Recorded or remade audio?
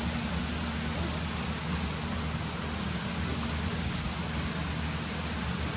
recorded